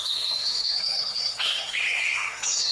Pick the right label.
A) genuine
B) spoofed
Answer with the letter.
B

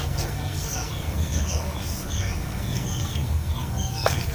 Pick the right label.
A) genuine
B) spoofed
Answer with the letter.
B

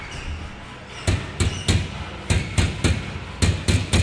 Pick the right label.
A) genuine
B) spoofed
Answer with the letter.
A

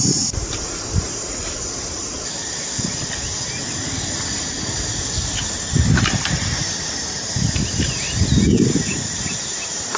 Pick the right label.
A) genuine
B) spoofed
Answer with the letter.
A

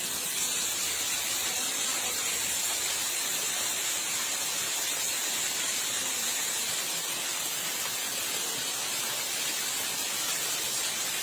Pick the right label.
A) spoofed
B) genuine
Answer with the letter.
B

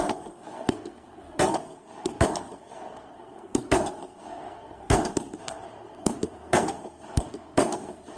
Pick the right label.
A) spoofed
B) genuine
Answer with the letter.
A